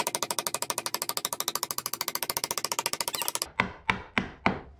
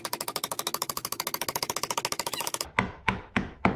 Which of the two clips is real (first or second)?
first